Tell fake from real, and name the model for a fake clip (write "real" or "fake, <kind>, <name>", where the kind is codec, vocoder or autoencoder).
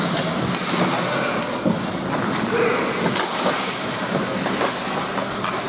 real